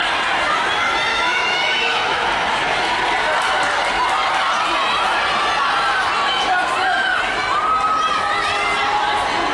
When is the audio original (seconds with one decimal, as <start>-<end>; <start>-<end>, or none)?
0.0-1.1; 2.3-9.5